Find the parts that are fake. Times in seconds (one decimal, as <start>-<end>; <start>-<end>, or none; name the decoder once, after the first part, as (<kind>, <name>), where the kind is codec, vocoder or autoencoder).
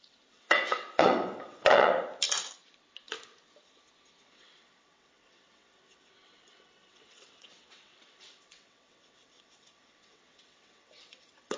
0.0-1.9 (vocoder, WaveNeXt); 4.2-11.6